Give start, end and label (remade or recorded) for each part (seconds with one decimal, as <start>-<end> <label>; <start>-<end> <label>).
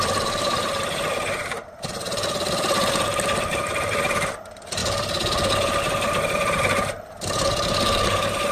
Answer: 0.0-3.1 remade; 3.1-3.8 recorded; 3.8-8.5 remade